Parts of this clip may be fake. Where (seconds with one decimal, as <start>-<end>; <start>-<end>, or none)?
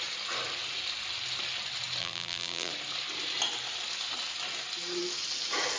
2.0-2.7